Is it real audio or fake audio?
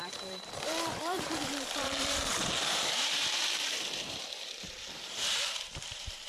fake